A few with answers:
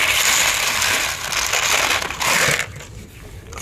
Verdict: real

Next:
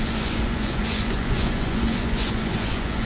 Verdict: fake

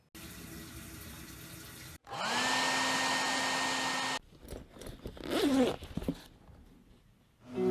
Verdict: real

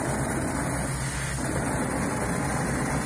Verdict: real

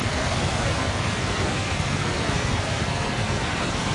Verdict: fake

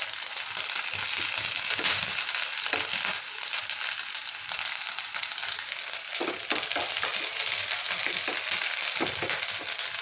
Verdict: real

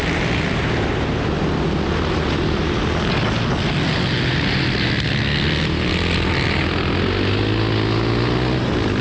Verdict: real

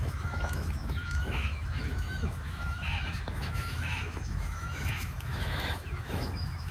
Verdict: fake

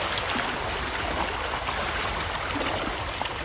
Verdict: real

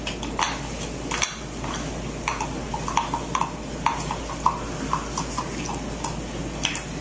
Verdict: real